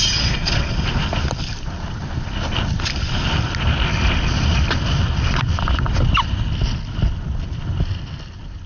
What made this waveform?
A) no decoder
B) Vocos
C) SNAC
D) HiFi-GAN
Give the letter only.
A